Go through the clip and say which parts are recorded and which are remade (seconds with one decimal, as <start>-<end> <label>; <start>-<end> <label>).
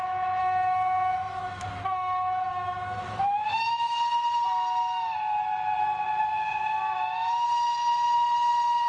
0.0-0.4 recorded; 0.4-4.0 remade; 4.0-8.9 recorded